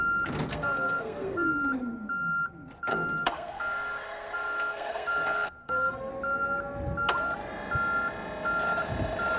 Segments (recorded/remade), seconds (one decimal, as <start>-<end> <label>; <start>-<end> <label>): 0.0-0.5 recorded; 0.5-1.5 remade; 1.5-2.9 recorded; 2.9-6.1 remade; 6.1-9.4 recorded